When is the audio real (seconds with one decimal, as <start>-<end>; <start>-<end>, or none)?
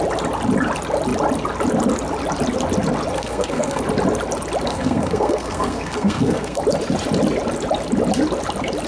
0.0-3.1; 3.8-4.7; 6.6-8.9